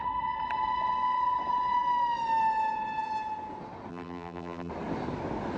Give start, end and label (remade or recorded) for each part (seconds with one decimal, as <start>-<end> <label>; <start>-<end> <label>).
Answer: 0.0-3.9 recorded; 3.9-4.7 remade; 4.7-5.6 recorded